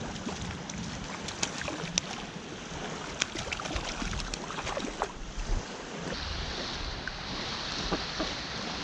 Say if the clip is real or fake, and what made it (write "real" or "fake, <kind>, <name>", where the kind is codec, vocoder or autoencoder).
real